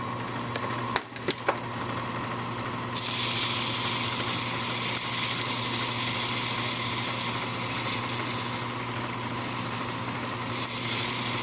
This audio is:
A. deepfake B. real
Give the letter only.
B